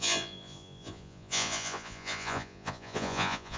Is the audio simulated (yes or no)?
yes